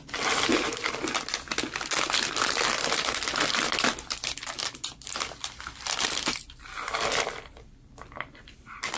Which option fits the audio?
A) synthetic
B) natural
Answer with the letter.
A